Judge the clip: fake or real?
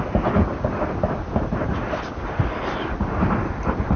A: real